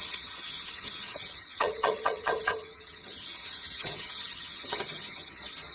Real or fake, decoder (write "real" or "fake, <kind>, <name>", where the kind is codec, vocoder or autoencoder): fake, vocoder, HiFi-GAN